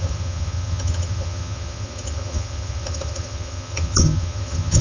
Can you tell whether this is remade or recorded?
remade